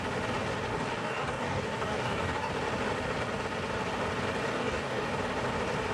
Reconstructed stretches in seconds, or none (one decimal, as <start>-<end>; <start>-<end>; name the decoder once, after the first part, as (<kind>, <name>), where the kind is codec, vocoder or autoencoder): 0.7-2.5 (codec, DAC); 4.4-5.1

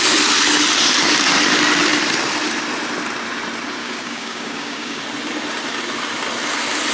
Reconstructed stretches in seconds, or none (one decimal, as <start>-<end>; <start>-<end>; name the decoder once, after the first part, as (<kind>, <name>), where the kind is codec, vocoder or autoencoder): 3.8-5.0 (codec, DAC)

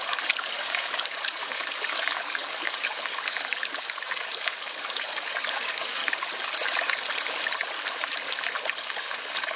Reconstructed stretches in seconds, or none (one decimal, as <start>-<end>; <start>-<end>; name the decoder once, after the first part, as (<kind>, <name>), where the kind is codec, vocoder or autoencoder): 0.0-6.0 (codec, DAC); 8.8-9.6

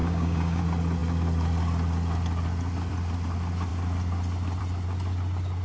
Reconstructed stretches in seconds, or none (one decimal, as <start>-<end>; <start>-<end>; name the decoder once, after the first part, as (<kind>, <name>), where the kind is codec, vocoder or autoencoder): 0.0-0.6 (codec, DAC)

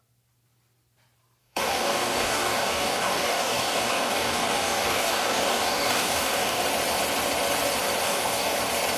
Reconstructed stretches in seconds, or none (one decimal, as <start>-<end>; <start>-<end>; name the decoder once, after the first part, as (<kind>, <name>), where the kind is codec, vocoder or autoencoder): 1.4-6.6 (codec, DAC); 8.0-8.6